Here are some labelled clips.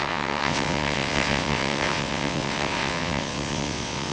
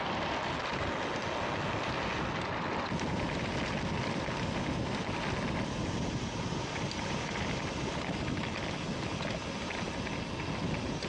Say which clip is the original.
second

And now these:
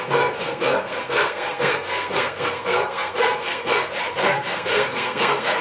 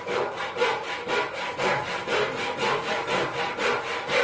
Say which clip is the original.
second